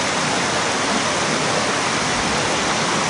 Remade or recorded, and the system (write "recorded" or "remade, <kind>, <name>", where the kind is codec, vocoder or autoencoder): recorded